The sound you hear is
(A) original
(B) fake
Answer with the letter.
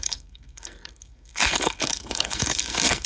B